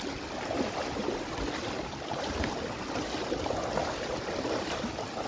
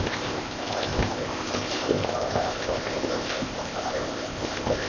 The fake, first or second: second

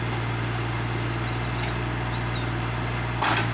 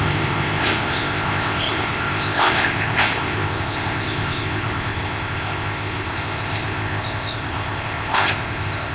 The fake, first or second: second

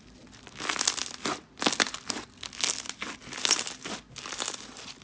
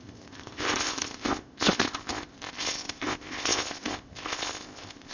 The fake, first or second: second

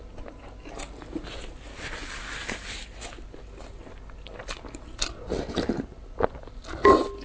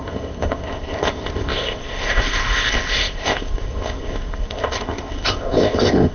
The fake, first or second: second